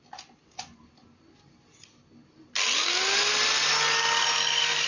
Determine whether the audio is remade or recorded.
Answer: recorded